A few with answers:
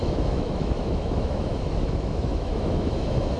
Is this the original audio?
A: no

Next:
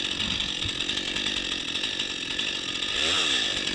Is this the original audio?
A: yes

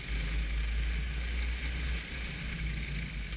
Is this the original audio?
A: yes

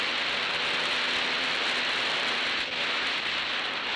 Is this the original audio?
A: yes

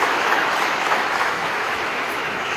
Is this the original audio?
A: no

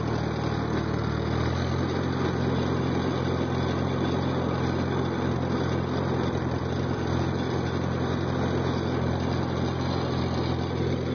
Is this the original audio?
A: yes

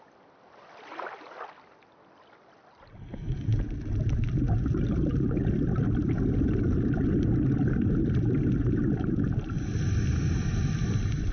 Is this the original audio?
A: yes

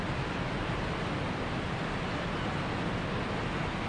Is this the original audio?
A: yes